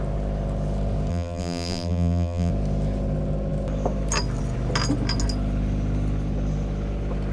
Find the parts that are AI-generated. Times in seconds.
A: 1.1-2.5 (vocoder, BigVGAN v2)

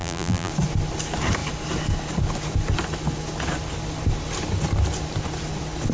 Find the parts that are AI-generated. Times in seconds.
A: 0.0-0.5 (vocoder, BigVGAN v2)

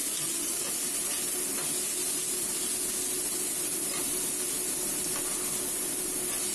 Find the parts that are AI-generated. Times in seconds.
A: none